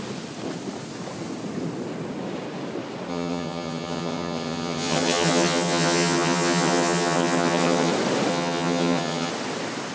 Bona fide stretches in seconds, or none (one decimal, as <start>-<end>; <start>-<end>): 0.0-3.1; 7.9-8.3; 9.3-9.9